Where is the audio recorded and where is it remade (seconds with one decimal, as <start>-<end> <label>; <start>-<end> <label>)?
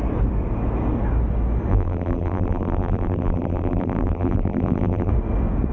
0.0-1.7 recorded; 1.7-5.1 remade; 5.1-5.7 recorded